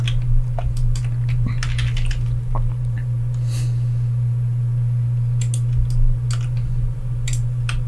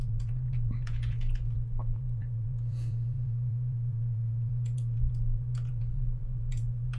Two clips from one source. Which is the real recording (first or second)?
first